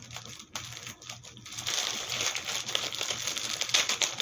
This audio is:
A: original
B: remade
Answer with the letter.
A